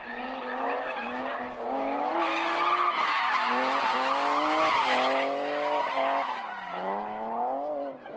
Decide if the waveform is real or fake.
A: real